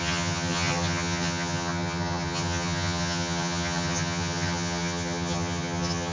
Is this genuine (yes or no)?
no